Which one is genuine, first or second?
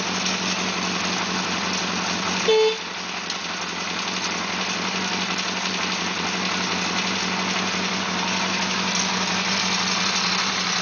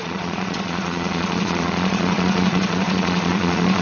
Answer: first